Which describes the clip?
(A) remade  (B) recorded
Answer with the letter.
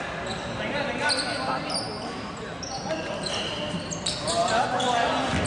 B